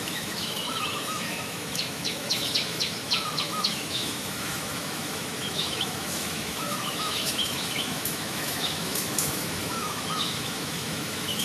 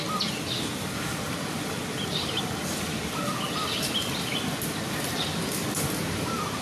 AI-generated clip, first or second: first